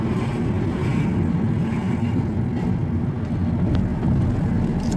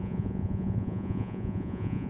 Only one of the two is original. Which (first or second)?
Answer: first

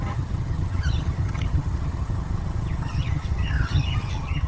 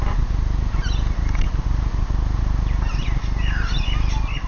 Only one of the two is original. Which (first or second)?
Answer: second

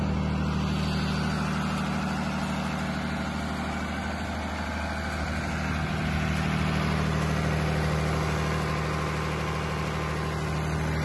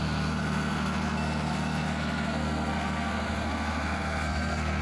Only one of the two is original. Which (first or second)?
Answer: first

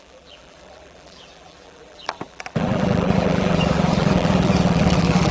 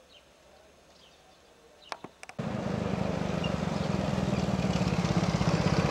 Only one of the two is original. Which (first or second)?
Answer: second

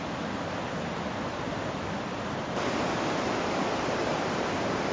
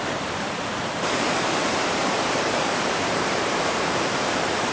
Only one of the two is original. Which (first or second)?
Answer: first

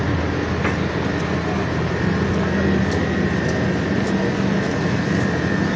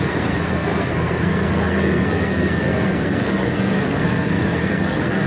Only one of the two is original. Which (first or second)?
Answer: first